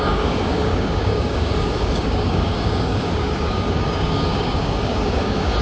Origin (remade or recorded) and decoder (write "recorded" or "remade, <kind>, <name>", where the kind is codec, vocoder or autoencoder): remade, codec, DAC